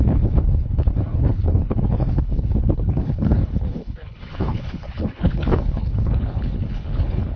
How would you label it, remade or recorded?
remade